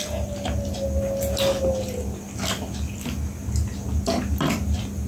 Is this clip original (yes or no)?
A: yes